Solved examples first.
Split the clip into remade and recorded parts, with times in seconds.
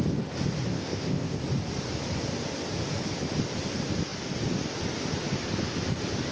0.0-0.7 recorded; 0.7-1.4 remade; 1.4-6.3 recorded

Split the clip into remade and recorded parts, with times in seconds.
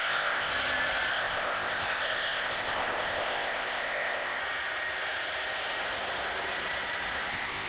0.0-0.5 remade; 0.5-1.1 recorded; 1.1-4.4 remade; 4.4-7.3 recorded; 7.3-7.7 remade